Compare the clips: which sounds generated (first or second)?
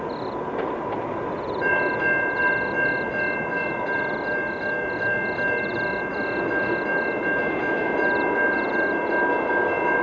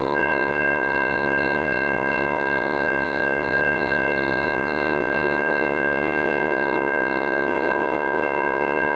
second